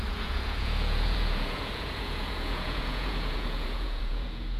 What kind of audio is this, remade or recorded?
remade